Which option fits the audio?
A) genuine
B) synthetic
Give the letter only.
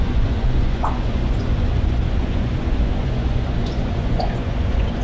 B